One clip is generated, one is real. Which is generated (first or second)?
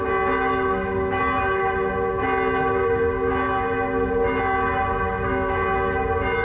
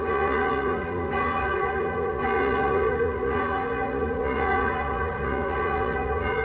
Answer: second